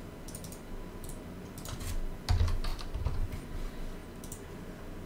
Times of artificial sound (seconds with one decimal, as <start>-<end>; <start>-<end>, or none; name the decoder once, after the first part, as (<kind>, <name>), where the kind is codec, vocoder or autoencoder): 2.7-3.3 (vocoder, BigVGAN v2)